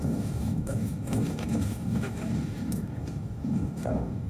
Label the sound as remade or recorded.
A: remade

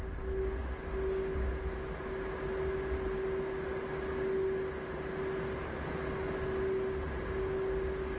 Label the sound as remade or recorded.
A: recorded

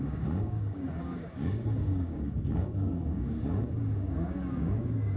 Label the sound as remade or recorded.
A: remade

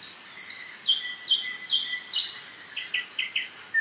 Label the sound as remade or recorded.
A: recorded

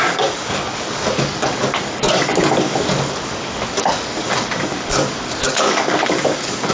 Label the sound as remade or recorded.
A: remade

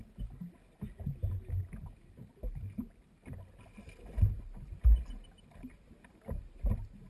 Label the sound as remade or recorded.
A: recorded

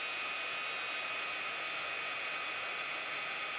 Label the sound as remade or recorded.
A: recorded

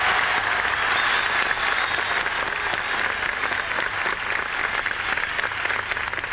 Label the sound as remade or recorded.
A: recorded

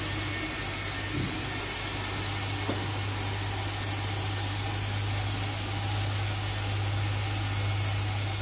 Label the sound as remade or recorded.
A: recorded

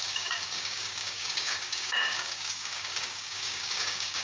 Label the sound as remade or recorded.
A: remade